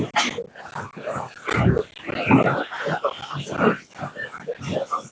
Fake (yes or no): no